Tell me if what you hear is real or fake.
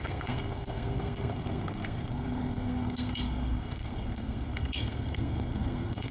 fake